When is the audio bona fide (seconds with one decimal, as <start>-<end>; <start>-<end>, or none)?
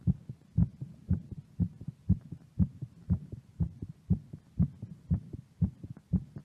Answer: 0.0-0.6; 4.4-6.4